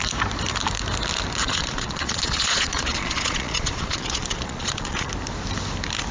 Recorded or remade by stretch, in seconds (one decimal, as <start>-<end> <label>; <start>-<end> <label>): 0.0-1.4 recorded; 1.4-5.1 remade; 5.1-6.1 recorded